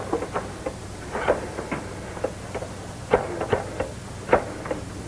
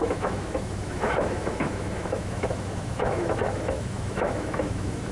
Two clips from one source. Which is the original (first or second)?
first